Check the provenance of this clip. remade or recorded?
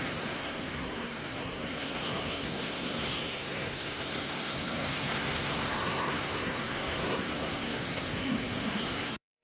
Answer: remade